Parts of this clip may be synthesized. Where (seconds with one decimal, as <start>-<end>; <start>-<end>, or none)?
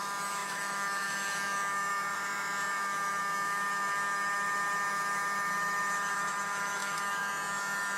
0.0-8.0